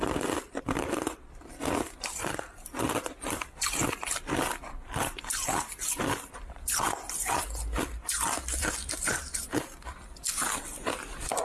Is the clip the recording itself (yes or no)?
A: no